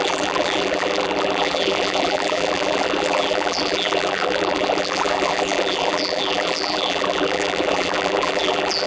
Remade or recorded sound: remade